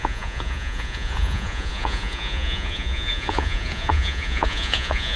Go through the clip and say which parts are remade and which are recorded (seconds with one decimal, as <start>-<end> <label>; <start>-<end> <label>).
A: 0.0-5.2 remade